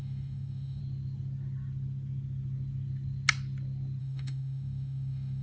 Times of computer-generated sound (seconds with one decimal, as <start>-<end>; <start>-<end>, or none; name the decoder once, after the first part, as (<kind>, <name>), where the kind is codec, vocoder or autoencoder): 0.0-0.8 (autoencoder, DAC-VAE); 4.0-5.4